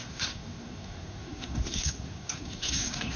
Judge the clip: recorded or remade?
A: remade